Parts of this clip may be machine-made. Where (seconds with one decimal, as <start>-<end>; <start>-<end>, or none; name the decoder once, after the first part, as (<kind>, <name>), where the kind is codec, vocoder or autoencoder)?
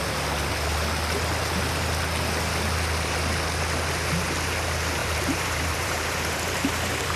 5.0-7.2 (vocoder, BigVGAN v2)